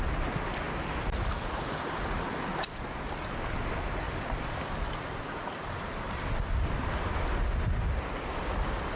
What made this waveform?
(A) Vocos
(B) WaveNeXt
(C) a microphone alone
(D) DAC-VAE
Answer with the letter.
C